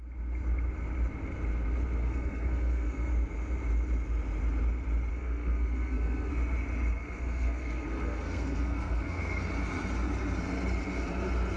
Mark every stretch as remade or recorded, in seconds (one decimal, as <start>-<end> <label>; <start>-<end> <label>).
0.0-2.0 recorded; 2.0-3.1 remade; 3.1-5.1 recorded; 5.1-6.3 remade; 6.3-7.0 recorded; 7.0-9.4 remade; 9.4-11.6 recorded